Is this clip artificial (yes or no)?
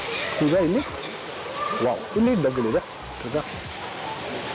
no